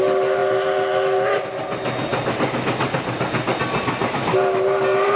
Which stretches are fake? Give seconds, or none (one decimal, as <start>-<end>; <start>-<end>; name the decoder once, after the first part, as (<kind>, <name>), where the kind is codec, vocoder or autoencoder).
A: none